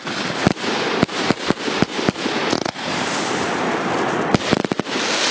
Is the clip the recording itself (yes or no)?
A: yes